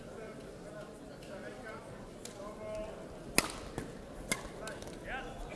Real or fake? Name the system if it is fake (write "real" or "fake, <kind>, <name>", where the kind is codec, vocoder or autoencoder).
real